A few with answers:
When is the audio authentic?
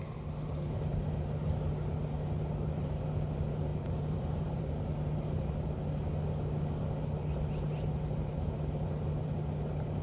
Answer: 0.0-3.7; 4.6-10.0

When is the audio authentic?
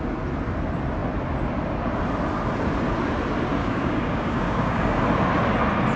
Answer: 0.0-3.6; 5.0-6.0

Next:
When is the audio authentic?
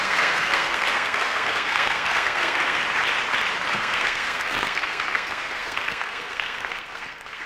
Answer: 2.8-3.7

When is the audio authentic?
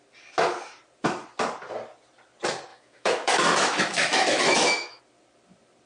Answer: 0.0-2.7; 5.0-5.9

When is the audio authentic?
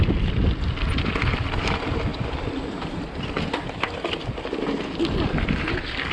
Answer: 0.0-6.1